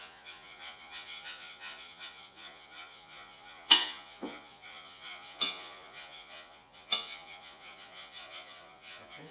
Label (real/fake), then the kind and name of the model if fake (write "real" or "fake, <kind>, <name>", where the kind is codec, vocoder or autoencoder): fake, vocoder, Vocos